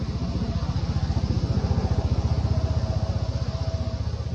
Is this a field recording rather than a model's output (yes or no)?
yes